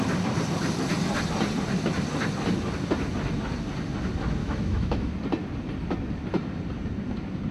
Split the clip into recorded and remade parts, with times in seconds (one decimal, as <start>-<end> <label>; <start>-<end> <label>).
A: 0.0-4.4 recorded; 4.4-5.1 remade; 5.1-7.5 recorded